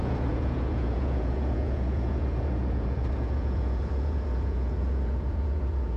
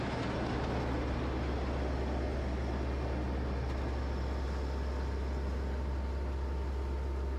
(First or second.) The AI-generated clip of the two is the first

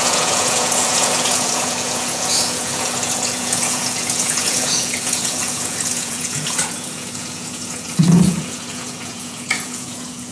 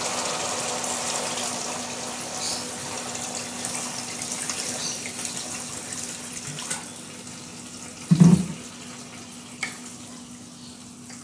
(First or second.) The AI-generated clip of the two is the first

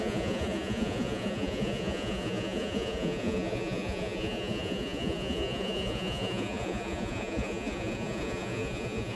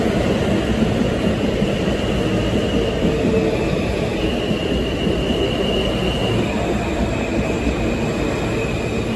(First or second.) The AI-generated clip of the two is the first